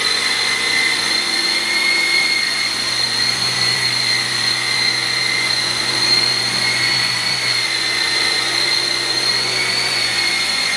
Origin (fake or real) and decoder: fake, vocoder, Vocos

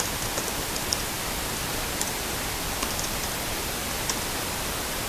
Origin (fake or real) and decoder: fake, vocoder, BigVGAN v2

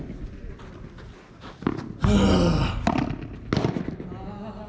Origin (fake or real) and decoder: real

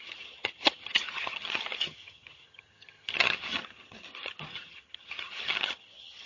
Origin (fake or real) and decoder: fake, vocoder, HiFi-GAN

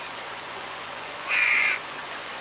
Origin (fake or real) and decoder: fake, vocoder, Vocos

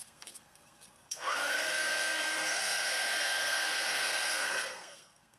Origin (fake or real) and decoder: fake, codec, SNAC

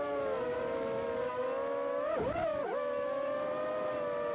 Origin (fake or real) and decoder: real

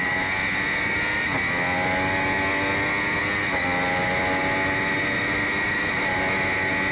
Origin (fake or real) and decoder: real